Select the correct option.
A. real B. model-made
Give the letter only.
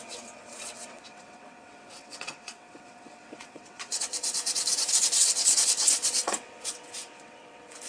B